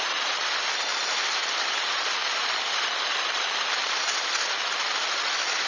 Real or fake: real